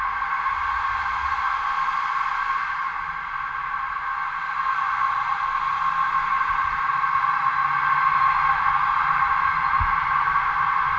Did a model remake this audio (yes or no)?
no